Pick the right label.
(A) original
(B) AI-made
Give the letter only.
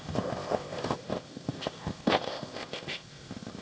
B